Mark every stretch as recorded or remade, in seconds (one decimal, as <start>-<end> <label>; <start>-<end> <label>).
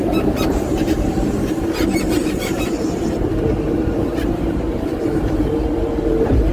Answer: 0.0-4.1 remade; 4.1-5.7 recorded; 5.7-6.5 remade